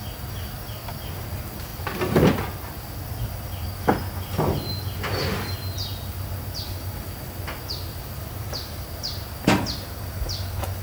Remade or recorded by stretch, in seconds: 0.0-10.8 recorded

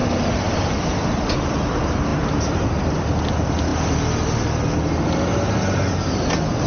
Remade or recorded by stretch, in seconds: 0.0-0.9 remade; 0.9-2.1 recorded; 2.1-2.8 remade; 2.8-6.7 recorded

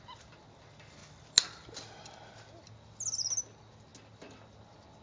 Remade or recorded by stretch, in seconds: 0.0-5.0 recorded

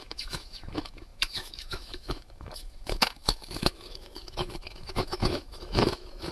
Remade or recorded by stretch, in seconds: 0.0-6.3 remade

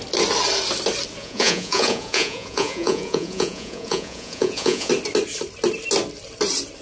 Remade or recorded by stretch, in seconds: 0.0-1.2 recorded; 1.2-4.9 remade; 4.9-6.8 recorded

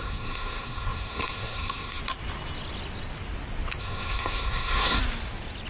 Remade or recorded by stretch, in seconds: 0.0-2.0 remade; 2.0-3.8 recorded; 3.8-5.0 remade; 5.0-5.7 recorded